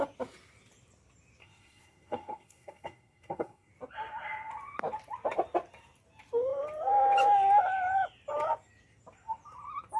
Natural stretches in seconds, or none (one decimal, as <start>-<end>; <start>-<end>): 0.0-1.4; 3.7-10.0